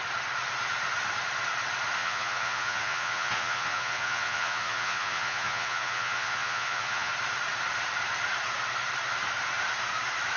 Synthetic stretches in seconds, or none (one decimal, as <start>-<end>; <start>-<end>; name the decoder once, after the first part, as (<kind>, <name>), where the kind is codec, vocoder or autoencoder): 2.0-7.1 (vocoder, Vocos)